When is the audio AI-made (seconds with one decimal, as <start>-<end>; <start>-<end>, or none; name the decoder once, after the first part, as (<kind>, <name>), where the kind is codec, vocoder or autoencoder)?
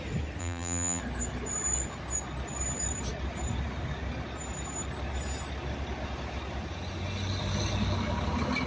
0.4-1.0 (vocoder, BigVGAN v2)